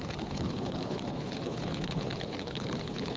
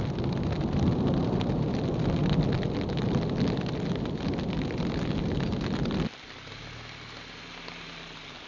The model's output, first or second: first